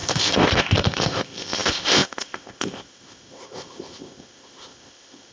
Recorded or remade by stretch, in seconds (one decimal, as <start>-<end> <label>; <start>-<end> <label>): 0.0-5.3 remade